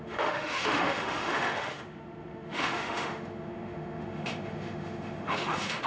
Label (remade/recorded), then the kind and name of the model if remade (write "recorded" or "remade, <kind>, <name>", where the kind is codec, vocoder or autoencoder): remade, autoencoder, DAC-VAE